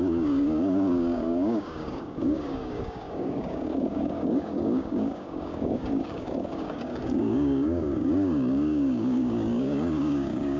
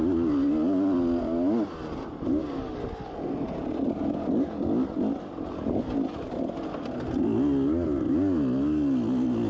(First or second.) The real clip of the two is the second